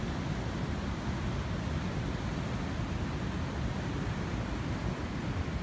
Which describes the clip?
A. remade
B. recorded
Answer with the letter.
B